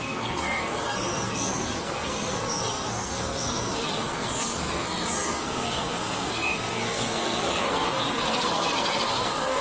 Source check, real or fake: fake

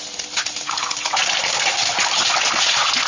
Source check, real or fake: real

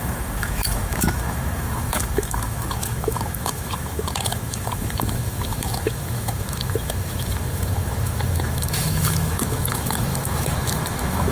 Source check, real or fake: fake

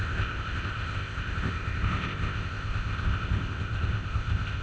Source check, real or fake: fake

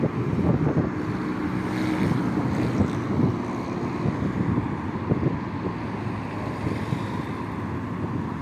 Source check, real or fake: real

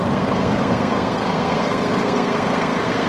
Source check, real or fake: fake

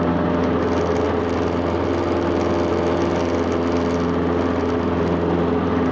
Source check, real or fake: real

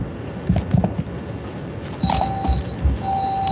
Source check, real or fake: real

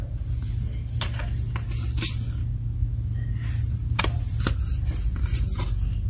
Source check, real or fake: real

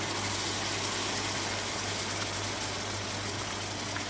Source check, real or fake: real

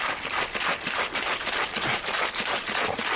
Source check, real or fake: real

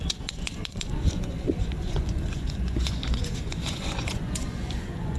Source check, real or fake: fake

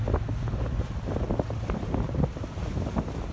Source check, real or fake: real